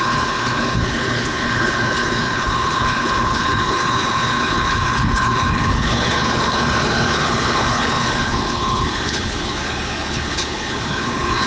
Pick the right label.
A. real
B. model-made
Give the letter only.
B